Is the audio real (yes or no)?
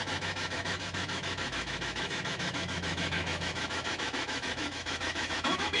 no